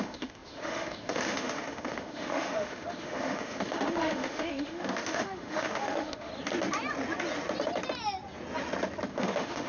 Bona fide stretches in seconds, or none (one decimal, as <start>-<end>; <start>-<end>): 6.3-9.1